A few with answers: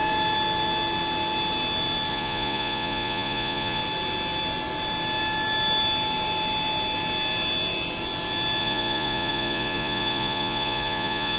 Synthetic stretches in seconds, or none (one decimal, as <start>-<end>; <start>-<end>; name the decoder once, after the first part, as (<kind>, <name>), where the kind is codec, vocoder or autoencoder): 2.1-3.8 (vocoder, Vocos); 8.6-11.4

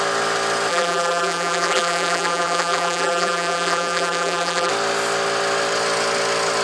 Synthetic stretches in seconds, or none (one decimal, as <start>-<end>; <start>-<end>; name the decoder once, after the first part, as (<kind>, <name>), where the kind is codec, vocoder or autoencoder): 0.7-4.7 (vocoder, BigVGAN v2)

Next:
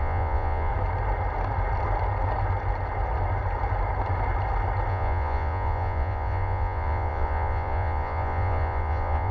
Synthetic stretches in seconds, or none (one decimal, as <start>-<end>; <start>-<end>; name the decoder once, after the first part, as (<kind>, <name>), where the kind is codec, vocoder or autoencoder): 0.0-0.7 (vocoder, Vocos); 4.9-9.3